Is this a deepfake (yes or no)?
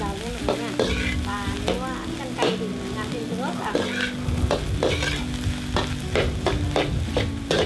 no